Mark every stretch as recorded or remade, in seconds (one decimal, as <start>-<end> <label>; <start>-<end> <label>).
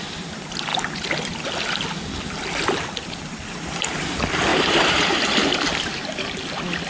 0.0-4.5 recorded; 4.5-5.7 remade; 5.7-6.9 recorded